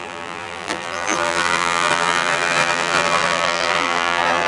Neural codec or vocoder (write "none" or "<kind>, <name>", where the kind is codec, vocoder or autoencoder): vocoder, BigVGAN v2